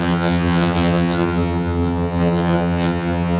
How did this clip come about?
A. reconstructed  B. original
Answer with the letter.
A